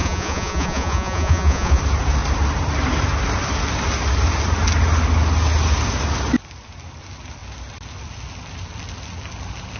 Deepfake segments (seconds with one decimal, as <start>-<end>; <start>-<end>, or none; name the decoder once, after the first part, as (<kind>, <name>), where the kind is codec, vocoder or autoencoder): 0.0-1.8 (vocoder, Vocos)